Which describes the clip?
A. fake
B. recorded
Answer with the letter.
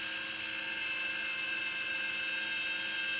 B